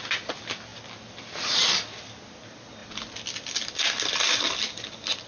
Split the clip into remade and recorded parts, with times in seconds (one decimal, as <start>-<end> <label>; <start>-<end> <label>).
0.0-5.3 recorded